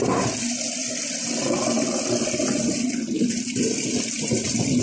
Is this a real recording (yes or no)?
no